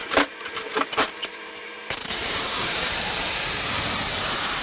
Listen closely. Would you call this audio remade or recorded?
remade